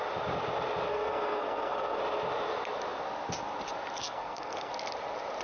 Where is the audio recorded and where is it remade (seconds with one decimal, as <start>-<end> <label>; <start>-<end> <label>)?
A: 0.0-0.9 recorded; 0.9-2.0 remade; 2.0-4.0 recorded; 4.0-4.7 remade; 4.7-5.4 recorded